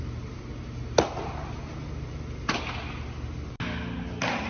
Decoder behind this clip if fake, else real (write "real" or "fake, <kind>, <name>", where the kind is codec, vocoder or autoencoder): real